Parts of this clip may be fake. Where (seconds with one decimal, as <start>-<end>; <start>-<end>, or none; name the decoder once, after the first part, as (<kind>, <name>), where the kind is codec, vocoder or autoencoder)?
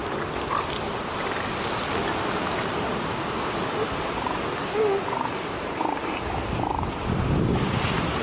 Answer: 3.1-3.6 (codec, DAC)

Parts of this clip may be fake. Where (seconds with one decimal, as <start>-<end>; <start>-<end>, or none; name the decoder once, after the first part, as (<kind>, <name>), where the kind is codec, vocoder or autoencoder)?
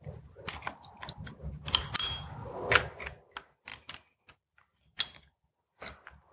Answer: none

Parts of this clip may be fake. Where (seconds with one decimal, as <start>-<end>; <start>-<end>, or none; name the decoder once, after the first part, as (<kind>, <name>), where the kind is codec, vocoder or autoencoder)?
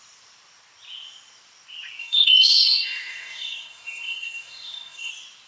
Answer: 2.0-5.1 (codec, SNAC)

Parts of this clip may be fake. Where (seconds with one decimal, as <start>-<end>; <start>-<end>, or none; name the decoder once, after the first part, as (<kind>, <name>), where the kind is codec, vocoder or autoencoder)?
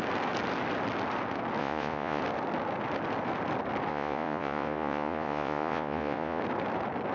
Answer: 1.6-2.2 (vocoder, Vocos); 3.9-6.4